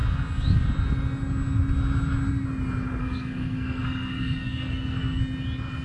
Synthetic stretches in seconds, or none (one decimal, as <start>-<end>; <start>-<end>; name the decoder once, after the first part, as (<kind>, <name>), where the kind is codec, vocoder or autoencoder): 3.0-5.2 (codec, SNAC)